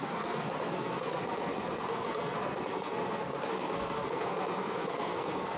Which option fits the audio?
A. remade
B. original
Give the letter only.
A